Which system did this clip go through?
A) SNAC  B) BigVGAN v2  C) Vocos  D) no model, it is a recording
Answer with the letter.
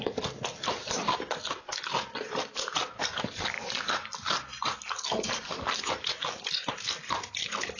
D